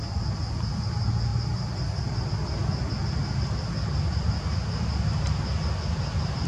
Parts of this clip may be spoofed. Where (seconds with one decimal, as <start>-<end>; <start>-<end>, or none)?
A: none